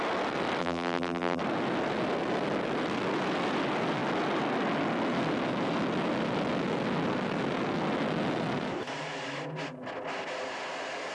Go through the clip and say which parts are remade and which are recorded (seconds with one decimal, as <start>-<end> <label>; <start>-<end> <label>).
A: 0.0-0.6 recorded; 0.6-1.4 remade; 1.4-11.1 recorded